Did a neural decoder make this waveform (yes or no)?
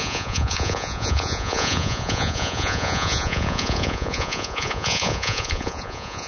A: yes